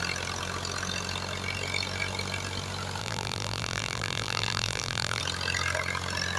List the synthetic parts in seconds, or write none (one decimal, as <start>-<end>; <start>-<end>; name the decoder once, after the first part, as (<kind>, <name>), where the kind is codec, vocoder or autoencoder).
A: 3.0-5.2 (vocoder, BigVGAN v2)